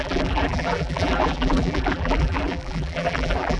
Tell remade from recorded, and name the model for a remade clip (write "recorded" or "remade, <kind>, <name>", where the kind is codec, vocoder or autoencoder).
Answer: remade, vocoder, BigVGAN v2